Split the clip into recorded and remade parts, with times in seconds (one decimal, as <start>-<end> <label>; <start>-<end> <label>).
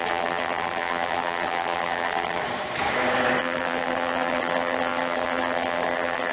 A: 0.0-2.4 remade; 2.4-3.4 recorded; 3.4-6.3 remade